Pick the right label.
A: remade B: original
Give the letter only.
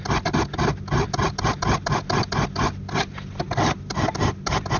B